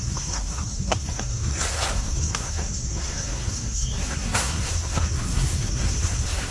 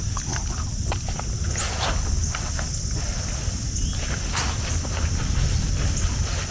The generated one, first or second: first